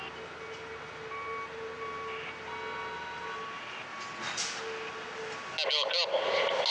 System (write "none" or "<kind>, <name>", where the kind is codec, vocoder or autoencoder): none